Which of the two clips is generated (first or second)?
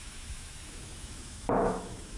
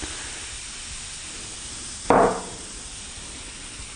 first